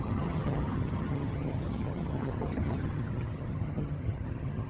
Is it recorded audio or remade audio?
remade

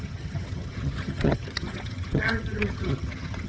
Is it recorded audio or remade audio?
remade